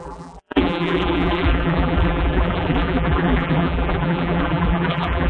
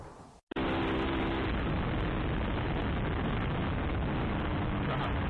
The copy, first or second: first